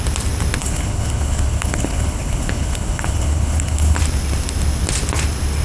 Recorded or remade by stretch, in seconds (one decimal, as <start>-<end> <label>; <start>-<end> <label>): 0.0-0.6 recorded; 0.6-4.0 remade; 4.0-5.6 recorded